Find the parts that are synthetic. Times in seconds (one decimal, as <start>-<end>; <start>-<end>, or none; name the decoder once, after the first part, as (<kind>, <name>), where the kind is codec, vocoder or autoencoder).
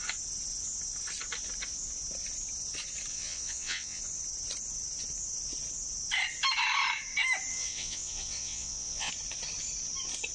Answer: 3.1-4.0 (vocoder, WaveNeXt); 7.5-9.1